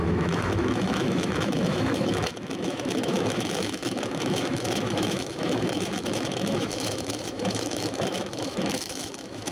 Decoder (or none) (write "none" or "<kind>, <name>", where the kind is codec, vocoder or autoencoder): autoencoder, DAC-VAE